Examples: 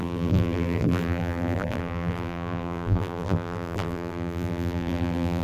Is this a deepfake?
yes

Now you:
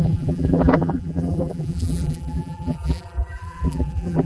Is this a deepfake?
yes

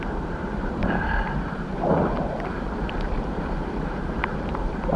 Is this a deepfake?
yes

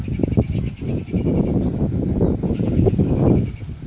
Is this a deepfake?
no